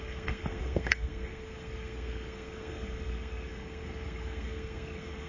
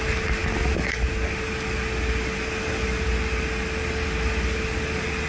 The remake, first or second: first